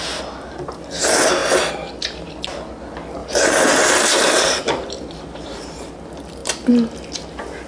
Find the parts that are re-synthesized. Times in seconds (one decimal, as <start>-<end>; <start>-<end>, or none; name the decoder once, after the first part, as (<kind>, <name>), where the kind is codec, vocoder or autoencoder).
3.2-5.9 (vocoder, BigVGAN v2)